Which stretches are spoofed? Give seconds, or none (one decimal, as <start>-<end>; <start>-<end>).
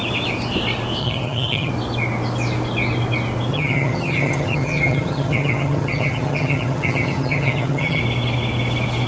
1.0-1.7; 3.5-8.0